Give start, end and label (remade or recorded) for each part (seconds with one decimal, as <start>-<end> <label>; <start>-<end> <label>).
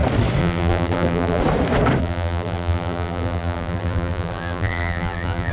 0.0-0.4 recorded; 0.4-1.4 remade; 1.4-2.0 recorded; 2.0-5.5 remade